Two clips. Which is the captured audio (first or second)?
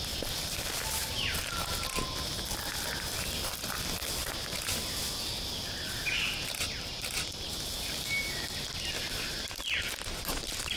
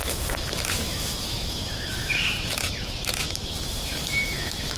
first